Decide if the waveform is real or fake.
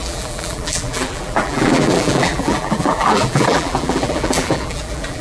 fake